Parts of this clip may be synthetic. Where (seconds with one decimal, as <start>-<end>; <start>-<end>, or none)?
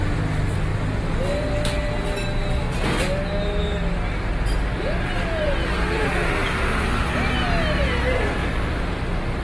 8.4-9.0